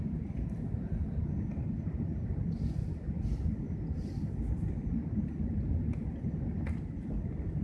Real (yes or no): no